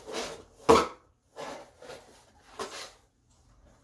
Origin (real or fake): real